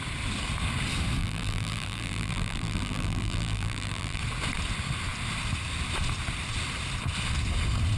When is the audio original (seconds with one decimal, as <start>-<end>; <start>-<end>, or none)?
0.0-1.2; 4.2-8.0

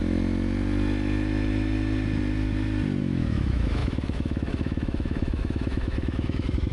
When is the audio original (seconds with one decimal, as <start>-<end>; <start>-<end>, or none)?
0.0-3.0

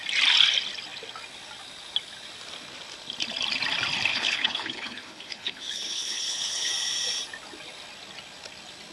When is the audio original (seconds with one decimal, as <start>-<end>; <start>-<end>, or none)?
0.0-4.1; 6.7-8.9

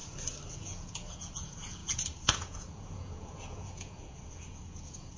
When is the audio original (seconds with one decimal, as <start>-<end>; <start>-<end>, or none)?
0.0-0.5

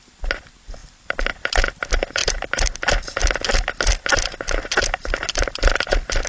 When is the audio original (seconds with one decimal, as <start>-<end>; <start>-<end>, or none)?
0.0-6.3

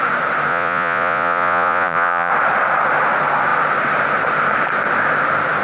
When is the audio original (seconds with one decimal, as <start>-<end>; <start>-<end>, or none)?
0.0-0.5; 2.3-5.6

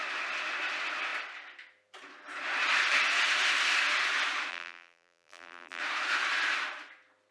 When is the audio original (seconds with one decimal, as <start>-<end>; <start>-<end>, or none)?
0.0-4.5; 5.8-7.3